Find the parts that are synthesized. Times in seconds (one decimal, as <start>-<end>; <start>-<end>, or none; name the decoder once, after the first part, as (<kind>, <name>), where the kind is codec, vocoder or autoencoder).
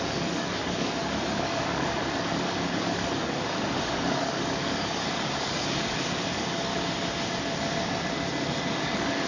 0.0-6.7 (codec, DAC); 8.8-9.3